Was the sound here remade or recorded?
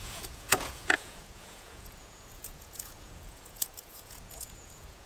remade